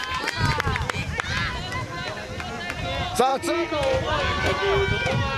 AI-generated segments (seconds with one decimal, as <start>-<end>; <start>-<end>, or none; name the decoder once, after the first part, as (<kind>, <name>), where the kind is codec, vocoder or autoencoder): 0.0-0.8 (vocoder, BigVGAN v2); 3.3-4.1